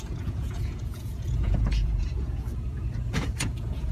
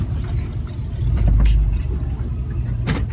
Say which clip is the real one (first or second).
second